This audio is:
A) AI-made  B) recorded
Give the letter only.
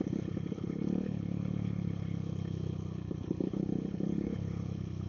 A